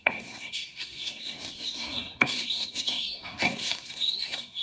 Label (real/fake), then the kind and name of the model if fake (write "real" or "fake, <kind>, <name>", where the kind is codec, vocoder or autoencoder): fake, codec, SNAC